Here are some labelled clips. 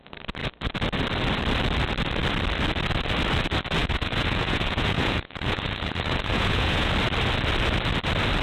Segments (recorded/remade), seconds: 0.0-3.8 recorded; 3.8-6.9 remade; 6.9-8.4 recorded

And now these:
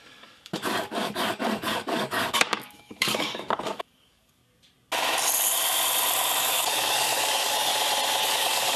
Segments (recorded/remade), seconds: 0.0-4.4 remade; 4.4-6.4 recorded; 6.4-7.7 remade; 7.7-8.2 recorded; 8.2-8.8 remade

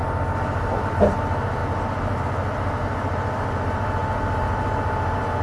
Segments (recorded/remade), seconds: 0.0-5.4 recorded